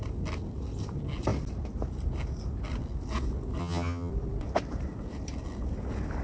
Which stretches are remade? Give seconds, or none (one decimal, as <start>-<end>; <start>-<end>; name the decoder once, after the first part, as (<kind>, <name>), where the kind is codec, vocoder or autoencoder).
3.6-4.1 (vocoder, HiFi-GAN)